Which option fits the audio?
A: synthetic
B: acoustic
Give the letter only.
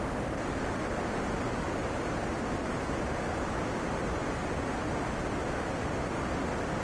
B